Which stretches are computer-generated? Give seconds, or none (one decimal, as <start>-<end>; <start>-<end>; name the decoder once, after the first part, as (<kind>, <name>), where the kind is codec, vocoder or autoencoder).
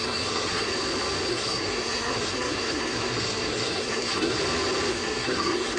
0.0-0.7 (codec, SNAC); 1.3-4.4; 4.9-5.8